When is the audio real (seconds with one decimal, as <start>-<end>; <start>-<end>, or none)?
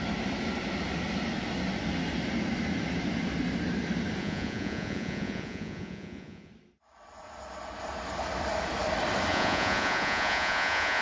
0.0-4.2; 6.5-9.3